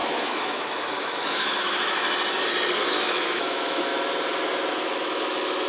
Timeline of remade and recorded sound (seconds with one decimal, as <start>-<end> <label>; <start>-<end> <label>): 0.0-2.0 remade; 2.0-2.9 recorded; 2.9-3.9 remade; 3.9-4.7 recorded; 4.7-5.7 remade